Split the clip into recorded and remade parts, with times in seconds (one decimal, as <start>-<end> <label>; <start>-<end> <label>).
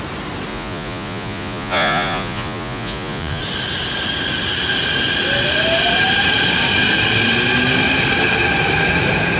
0.0-0.5 recorded; 0.5-3.4 remade; 3.4-9.4 recorded